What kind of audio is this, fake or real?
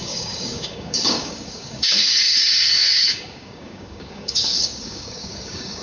fake